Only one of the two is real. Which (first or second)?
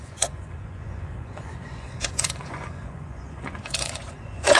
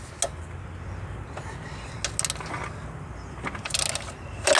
second